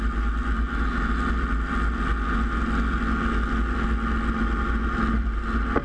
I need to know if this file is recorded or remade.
recorded